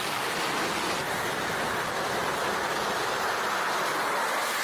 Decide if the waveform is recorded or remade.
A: recorded